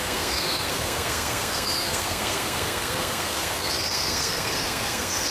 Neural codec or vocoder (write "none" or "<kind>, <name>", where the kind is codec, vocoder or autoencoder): codec, SNAC